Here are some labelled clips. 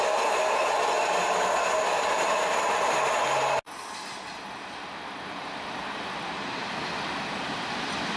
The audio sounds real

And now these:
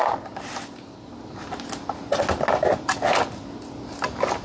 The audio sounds real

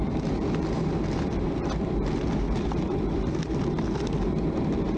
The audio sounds real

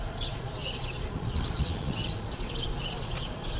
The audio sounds fake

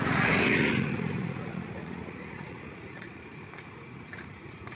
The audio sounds fake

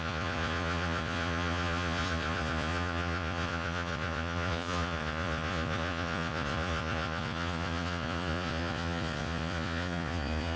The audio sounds fake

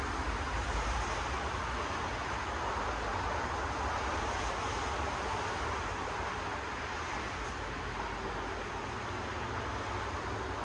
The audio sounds real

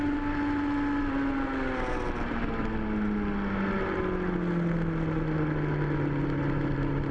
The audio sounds real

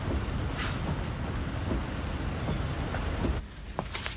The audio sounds real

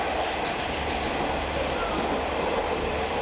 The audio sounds real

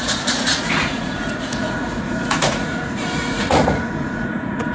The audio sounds fake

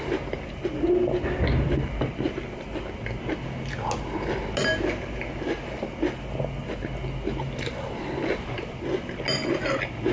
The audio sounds real